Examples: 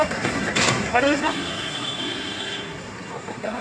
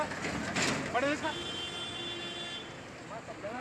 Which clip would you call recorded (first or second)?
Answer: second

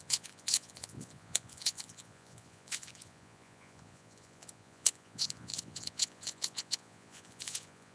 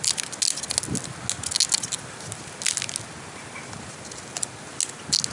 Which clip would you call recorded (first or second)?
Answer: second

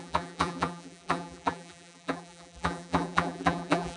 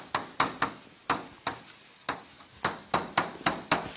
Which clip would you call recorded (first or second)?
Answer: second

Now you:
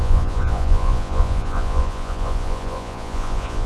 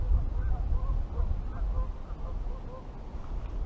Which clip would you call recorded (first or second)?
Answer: second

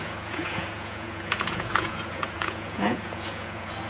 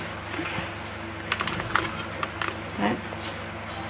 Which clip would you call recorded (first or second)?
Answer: second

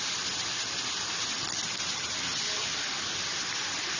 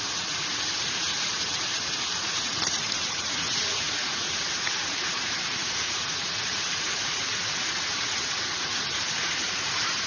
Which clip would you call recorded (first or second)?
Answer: first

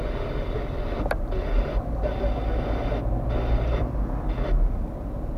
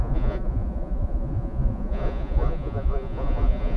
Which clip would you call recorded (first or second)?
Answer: first